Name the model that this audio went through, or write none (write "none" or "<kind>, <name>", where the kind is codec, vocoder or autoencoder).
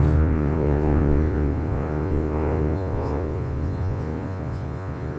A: vocoder, Vocos